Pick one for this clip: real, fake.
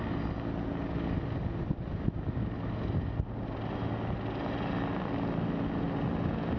real